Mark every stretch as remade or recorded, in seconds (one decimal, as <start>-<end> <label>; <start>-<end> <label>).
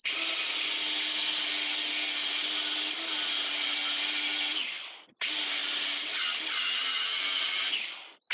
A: 0.0-8.3 recorded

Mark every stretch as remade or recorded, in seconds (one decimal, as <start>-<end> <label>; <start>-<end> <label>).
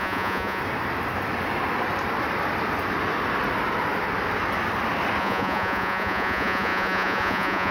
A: 0.0-0.6 remade; 0.6-5.2 recorded; 5.2-7.7 remade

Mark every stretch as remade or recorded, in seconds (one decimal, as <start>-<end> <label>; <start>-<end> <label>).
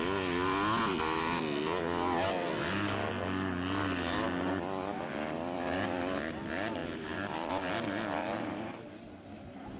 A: 0.0-6.8 recorded; 6.8-7.5 remade; 7.5-8.2 recorded; 8.2-8.9 remade; 8.9-9.8 recorded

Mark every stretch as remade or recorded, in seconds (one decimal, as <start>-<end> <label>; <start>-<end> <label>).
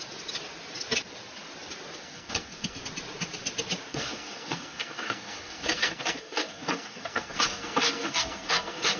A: 0.0-2.0 recorded; 2.0-2.8 remade; 2.8-3.9 recorded; 3.9-9.0 remade